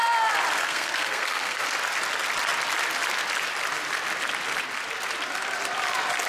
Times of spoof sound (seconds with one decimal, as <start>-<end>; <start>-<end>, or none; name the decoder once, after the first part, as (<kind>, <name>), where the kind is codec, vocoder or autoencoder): 0.6-1.6 (codec, SNAC)